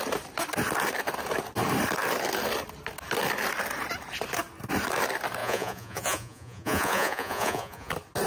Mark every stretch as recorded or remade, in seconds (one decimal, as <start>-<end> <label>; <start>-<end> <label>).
0.0-5.4 recorded; 5.4-7.9 remade; 7.9-8.3 recorded